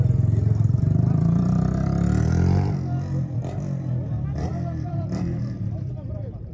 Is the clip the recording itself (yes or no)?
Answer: no